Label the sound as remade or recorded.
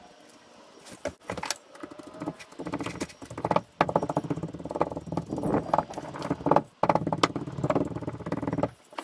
recorded